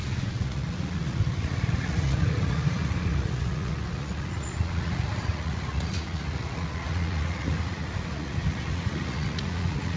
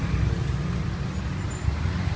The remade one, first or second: first